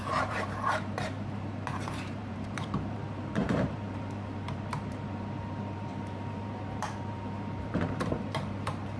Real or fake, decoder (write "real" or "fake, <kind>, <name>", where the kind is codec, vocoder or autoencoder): fake, vocoder, BigVGAN v2